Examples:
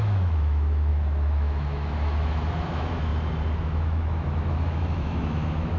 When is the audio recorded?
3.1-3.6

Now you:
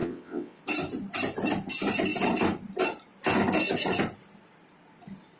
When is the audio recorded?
0.6-5.4

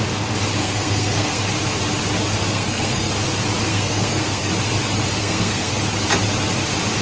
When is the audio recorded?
0.0-0.6; 1.4-2.5; 3.1-3.7; 4.5-5.2; 5.7-7.0

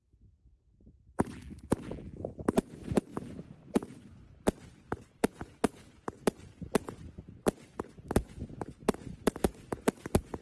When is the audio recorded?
0.0-10.4

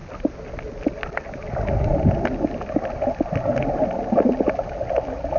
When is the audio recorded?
0.0-5.4